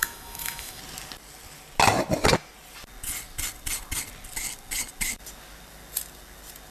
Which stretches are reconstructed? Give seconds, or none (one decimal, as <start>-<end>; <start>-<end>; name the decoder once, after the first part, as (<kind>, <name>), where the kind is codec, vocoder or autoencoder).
0.0-0.8 (autoencoder, DAC-VAE)